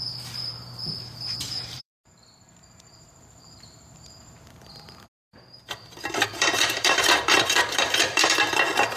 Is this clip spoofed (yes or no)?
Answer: yes